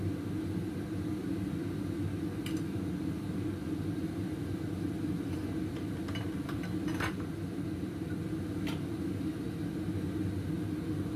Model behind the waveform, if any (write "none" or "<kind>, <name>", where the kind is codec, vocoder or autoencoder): none